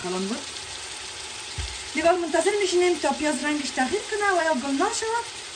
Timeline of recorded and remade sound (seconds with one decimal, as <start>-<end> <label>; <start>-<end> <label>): 0.0-2.5 remade; 2.5-5.6 recorded